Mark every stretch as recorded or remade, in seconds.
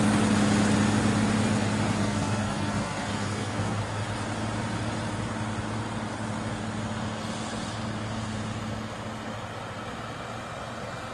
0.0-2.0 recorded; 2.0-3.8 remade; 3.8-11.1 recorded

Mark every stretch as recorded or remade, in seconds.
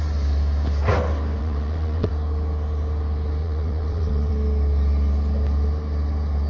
0.0-1.4 recorded; 1.4-2.1 remade; 2.1-3.4 recorded; 3.4-4.3 remade; 4.3-6.5 recorded